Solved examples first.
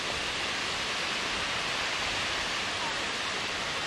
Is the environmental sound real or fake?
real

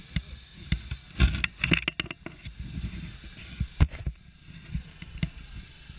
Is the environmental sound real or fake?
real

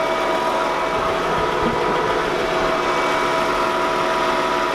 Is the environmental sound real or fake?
real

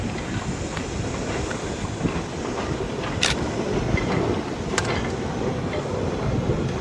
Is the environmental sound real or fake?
real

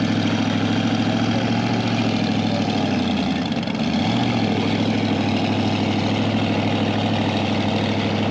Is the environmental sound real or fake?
real